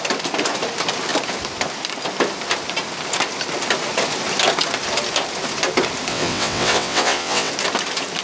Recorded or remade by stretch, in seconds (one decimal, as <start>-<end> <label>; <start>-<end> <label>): 0.0-6.1 recorded; 6.1-7.5 remade; 7.5-8.2 recorded